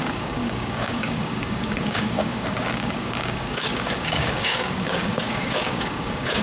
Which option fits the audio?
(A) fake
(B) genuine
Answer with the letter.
A